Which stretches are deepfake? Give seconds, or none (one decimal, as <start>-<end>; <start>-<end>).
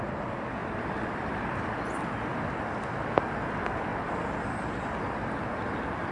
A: 0.6-1.6